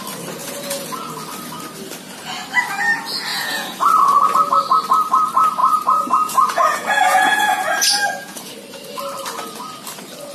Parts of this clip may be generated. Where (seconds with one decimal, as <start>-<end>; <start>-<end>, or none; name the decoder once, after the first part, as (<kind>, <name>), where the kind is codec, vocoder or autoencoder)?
0.4-1.1 (vocoder, Vocos); 3.3-3.8; 5.6-8.5

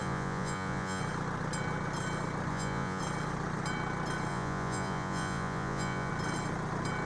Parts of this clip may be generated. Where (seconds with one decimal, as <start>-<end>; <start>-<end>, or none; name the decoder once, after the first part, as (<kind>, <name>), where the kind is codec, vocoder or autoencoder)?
0.0-1.0 (vocoder, Vocos); 2.5-3.0; 4.3-6.1

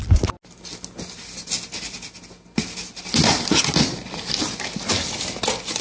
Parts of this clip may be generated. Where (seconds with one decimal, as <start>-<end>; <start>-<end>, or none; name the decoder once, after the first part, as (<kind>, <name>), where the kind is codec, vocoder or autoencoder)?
none

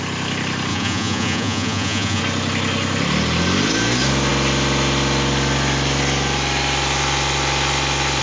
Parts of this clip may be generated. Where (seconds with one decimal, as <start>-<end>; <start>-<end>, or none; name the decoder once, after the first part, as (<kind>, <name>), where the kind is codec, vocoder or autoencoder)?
0.7-2.2 (vocoder, Vocos)

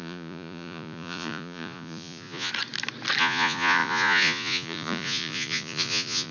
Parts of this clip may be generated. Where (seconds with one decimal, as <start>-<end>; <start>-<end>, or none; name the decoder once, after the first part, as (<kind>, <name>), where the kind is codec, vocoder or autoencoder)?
0.0-2.5 (vocoder, Vocos); 3.2-6.3

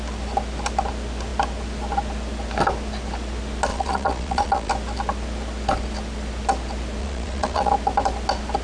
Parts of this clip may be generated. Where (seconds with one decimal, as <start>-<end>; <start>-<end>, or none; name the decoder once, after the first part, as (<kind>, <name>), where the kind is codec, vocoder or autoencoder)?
3.7-4.7 (vocoder, Vocos); 7.0-7.7

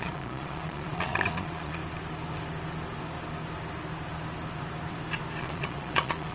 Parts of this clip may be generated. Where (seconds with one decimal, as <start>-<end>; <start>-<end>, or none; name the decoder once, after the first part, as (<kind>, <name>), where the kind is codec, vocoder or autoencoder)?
0.0-1.8 (vocoder, Vocos); 5.4-6.3